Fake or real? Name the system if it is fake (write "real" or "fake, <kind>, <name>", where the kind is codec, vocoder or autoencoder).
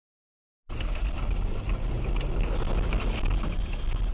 real